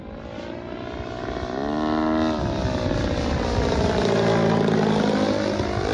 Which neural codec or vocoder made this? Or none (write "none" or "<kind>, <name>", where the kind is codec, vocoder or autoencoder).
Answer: none